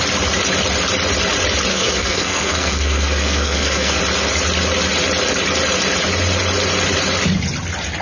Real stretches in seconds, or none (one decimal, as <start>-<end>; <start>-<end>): 0.0-1.7; 4.0-8.0